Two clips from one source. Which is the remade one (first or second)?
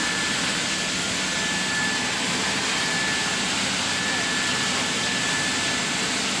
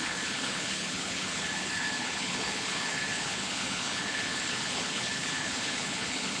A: second